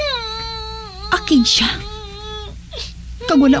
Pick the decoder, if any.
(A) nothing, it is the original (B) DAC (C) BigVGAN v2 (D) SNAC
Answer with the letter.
A